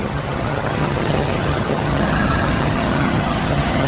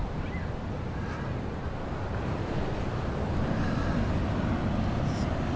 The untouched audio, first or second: second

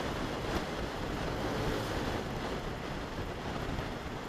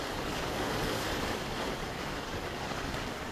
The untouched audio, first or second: first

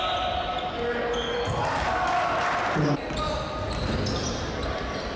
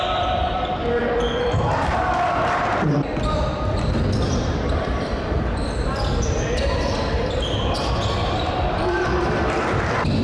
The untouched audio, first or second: first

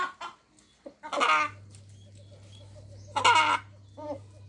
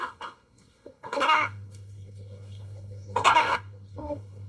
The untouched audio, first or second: first